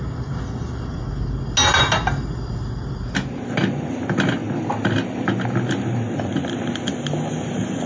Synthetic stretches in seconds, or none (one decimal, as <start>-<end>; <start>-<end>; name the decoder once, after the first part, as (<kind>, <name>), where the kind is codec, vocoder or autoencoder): none

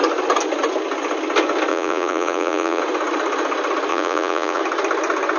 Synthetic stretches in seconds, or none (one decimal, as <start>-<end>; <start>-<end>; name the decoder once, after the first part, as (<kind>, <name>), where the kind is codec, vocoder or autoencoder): 1.7-2.8 (vocoder, Vocos); 3.9-4.6

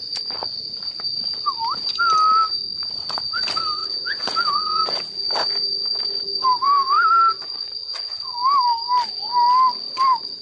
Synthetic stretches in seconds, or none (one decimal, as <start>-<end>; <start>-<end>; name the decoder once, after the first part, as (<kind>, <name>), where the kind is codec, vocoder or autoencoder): 3.8-5.0 (vocoder, Vocos); 6.4-7.1